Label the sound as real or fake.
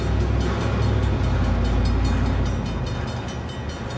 real